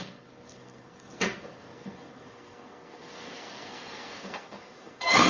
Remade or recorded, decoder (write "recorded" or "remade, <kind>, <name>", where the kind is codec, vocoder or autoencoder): remade, codec, SNAC